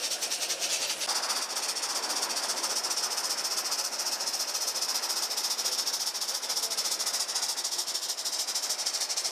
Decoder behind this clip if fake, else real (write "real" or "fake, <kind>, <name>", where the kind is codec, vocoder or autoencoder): real